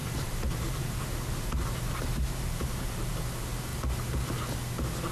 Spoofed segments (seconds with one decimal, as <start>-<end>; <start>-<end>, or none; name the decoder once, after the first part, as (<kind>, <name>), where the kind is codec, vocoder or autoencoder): 0.0-3.1 (vocoder, BigVGAN v2)

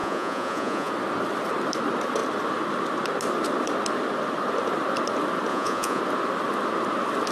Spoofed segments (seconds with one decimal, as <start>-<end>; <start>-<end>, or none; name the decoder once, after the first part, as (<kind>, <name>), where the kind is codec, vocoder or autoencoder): 0.0-0.9 (vocoder, Vocos); 5.5-6.0